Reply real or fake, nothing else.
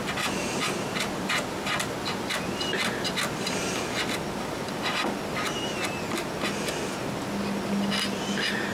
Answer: real